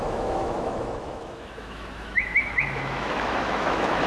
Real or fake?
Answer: fake